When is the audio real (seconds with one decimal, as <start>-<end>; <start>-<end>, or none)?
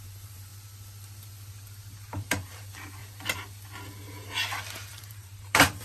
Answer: 0.5-2.1; 3.0-4.9